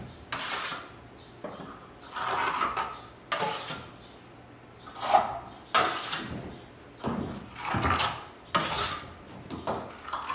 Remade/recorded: recorded